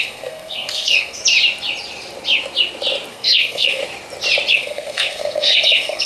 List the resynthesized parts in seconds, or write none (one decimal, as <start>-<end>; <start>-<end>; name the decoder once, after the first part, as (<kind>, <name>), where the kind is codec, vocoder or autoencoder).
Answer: 0.0-1.2 (codec, SNAC); 3.1-3.8; 4.5-6.1

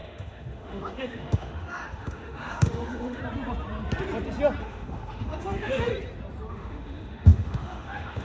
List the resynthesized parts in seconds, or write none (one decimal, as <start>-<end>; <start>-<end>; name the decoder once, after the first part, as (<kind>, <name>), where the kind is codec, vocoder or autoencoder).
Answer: 0.0-3.2 (autoencoder, DAC-VAE); 4.6-5.9; 6.5-8.2

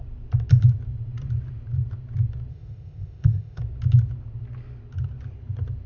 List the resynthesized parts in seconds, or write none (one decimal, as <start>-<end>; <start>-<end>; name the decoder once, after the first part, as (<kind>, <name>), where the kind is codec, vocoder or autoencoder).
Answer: 2.5-3.6 (codec, ZipCodec)

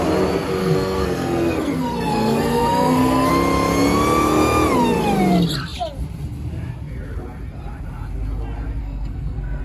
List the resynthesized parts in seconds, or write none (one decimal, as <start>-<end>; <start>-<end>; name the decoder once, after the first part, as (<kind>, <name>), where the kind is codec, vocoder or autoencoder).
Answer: 0.6-3.3 (codec, SNAC); 8.8-9.6

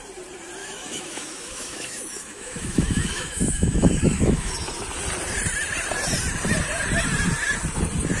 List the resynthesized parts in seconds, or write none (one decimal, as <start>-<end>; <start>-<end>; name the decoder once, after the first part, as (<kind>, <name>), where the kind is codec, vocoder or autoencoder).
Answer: 0.6-4.5 (autoencoder, DAC-VAE)

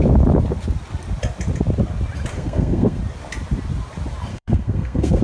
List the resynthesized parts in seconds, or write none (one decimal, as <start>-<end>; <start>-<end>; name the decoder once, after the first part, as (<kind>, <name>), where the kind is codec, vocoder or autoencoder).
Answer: 2.3-3.0 (codec, SNAC); 4.3-5.2